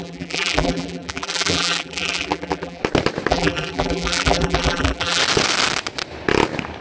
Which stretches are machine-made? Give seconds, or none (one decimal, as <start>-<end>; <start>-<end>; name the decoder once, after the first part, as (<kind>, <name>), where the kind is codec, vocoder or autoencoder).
0.0-2.8 (vocoder, BigVGAN v2); 3.3-5.2